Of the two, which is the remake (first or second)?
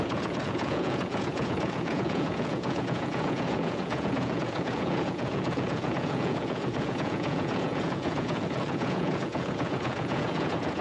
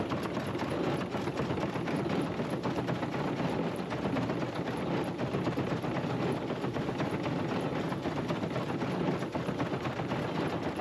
first